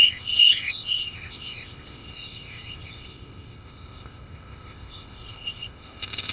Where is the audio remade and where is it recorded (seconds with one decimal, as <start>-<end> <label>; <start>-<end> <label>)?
0.0-6.3 remade